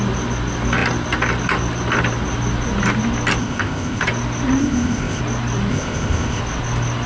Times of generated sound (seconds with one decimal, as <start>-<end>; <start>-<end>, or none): 3.4-4.0; 4.6-5.2; 5.7-6.4